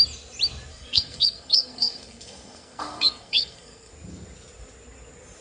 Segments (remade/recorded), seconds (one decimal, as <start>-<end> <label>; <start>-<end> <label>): 0.0-0.7 recorded; 0.7-3.9 remade; 3.9-5.4 recorded